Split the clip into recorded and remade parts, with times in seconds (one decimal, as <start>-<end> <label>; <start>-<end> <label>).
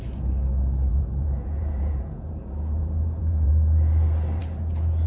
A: 0.0-0.9 recorded; 0.9-3.5 remade; 3.5-5.1 recorded